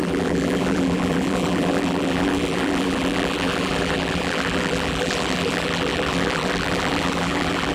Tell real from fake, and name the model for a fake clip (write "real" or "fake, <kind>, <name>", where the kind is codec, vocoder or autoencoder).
fake, vocoder, BigVGAN v2